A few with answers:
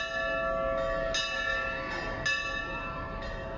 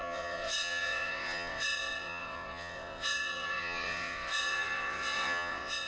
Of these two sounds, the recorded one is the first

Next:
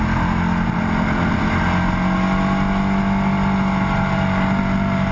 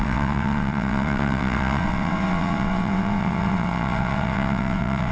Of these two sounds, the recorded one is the first